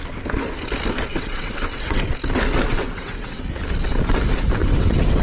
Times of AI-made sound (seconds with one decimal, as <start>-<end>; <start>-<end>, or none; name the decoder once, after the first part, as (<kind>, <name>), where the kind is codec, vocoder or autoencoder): 1.1-2.1 (vocoder, WaveNeXt); 2.8-3.4; 4.6-5.2